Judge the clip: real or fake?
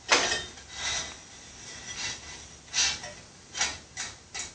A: real